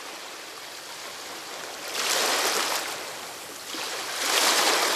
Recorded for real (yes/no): yes